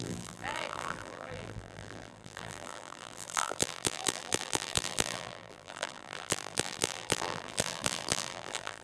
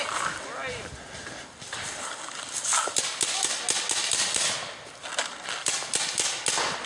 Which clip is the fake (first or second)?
first